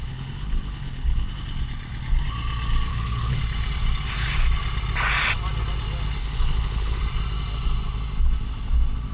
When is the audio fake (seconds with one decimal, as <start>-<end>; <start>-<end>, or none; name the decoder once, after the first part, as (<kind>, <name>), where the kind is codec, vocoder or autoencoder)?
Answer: 0.0-1.3 (codec, HILCodec); 2.9-3.4; 6.2-7.0

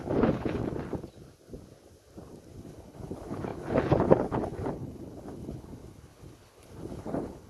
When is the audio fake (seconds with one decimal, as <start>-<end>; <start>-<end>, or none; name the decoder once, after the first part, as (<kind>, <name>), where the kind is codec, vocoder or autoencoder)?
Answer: 0.0-0.6 (codec, HILCodec); 2.6-7.5